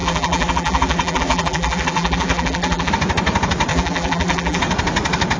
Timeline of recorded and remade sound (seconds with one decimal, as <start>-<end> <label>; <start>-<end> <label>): 0.0-2.9 remade; 2.9-3.7 recorded; 3.7-4.6 remade; 4.6-5.4 recorded